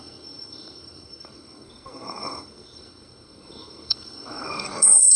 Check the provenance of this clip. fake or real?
fake